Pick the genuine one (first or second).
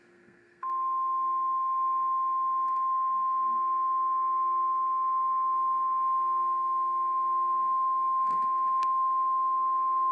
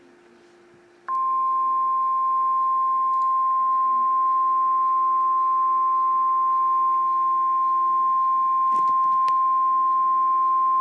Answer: second